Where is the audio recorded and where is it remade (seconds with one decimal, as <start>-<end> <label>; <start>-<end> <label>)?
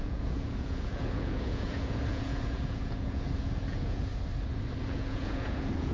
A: 0.0-4.1 remade; 4.1-4.8 recorded; 4.8-5.9 remade